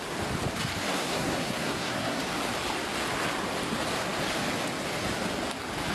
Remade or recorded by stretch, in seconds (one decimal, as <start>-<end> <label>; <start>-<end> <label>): 0.0-0.9 recorded; 0.9-2.2 remade; 2.2-5.9 recorded